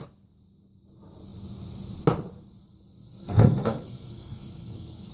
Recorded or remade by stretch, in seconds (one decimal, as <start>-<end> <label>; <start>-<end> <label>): 0.0-2.6 recorded; 2.6-5.1 remade